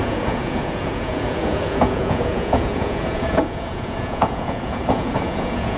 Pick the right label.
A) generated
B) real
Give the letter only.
A